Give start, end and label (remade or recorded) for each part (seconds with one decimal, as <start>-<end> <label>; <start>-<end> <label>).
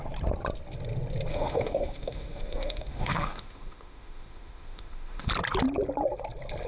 0.0-1.3 recorded; 1.3-5.3 remade; 5.3-6.7 recorded